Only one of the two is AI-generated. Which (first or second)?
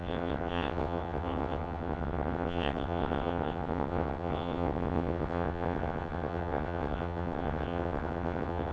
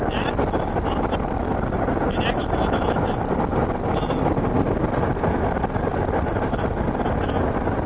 first